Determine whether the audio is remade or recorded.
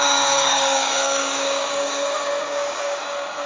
remade